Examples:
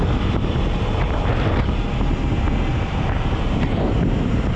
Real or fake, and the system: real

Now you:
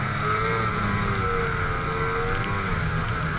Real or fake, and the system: real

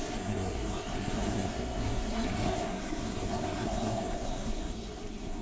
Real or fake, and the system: fake, codec, SNAC